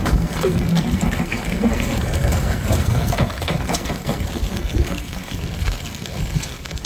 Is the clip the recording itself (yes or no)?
no